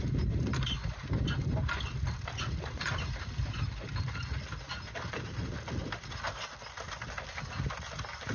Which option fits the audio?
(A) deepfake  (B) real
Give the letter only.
B